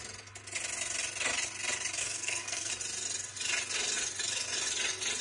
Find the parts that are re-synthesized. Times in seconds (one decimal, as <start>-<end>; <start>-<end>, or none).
2.0-2.7